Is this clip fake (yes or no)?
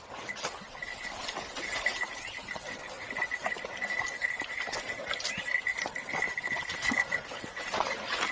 no